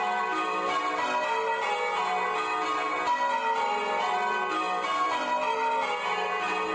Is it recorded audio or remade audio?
recorded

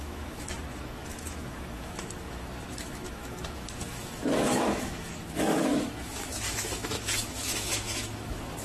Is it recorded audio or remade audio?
remade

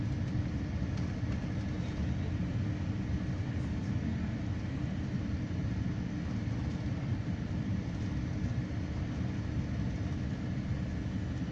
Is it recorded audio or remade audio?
recorded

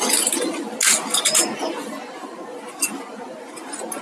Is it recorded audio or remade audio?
recorded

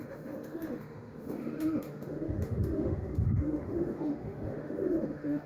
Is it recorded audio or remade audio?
remade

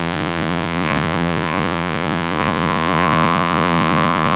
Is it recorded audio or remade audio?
remade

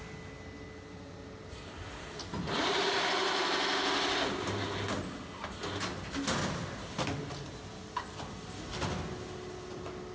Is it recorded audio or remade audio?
recorded